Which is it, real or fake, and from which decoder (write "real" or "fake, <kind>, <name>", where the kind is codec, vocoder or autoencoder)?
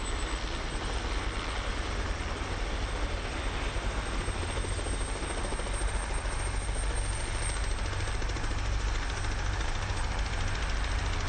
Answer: real